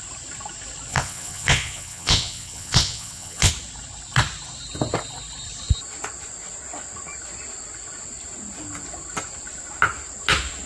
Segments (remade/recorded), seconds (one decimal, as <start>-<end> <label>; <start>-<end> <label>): 0.0-0.9 recorded; 0.9-3.5 remade; 3.5-10.7 recorded